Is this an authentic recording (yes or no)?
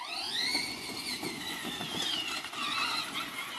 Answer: no